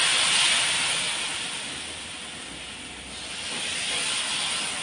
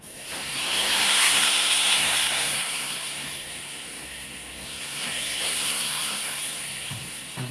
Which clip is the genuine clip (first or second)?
first